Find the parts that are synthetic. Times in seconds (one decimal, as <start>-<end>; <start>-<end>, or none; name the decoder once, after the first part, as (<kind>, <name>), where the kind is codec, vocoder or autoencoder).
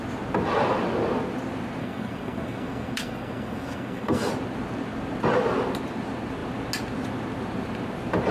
1.8-4.3 (codec, SNAC)